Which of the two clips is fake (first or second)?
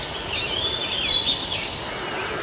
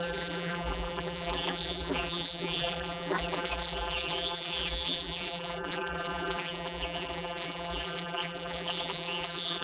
second